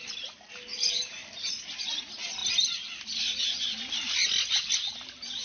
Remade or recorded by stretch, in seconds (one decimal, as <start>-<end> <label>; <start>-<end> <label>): 0.0-0.7 recorded; 0.7-1.5 remade; 1.5-5.4 recorded

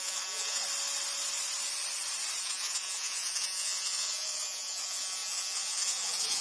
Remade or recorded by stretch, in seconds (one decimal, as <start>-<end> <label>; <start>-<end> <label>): 0.0-0.6 remade; 0.6-2.4 recorded; 2.4-6.4 remade

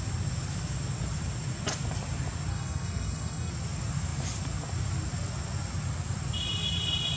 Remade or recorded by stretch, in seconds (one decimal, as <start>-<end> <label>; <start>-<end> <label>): 0.0-2.5 recorded; 2.5-3.5 remade; 3.5-7.2 recorded

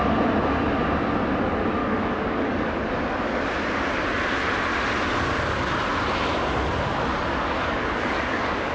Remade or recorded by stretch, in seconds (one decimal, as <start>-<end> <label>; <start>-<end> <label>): 0.0-1.8 recorded; 1.8-3.4 remade; 3.4-7.1 recorded; 7.1-8.7 remade

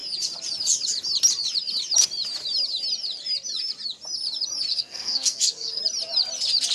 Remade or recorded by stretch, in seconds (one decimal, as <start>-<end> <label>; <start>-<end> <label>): 0.0-4.7 recorded; 4.7-5.8 remade; 5.8-6.7 recorded

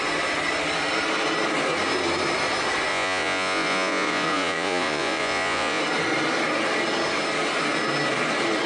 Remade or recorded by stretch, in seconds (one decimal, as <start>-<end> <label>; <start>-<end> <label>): 0.0-2.9 recorded; 2.9-5.8 remade; 5.8-8.7 recorded

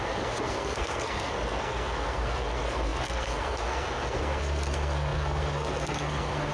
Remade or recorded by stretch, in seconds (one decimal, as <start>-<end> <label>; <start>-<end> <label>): 0.0-6.5 remade

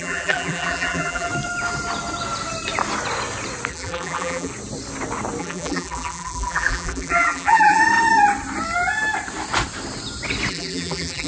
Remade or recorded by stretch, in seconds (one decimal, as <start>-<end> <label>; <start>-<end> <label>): 0.0-1.3 remade; 1.3-3.7 recorded; 3.7-4.5 remade; 4.5-5.4 recorded; 5.4-7.8 remade; 7.8-10.5 recorded; 10.5-11.3 remade